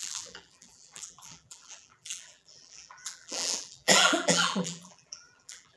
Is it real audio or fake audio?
fake